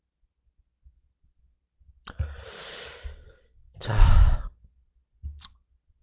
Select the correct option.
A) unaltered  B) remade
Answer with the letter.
A